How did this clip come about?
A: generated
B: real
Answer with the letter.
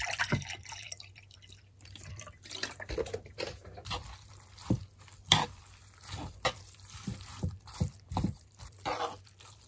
A